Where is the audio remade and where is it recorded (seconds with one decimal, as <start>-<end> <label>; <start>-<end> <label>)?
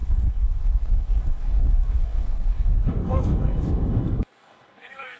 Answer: 0.0-5.2 remade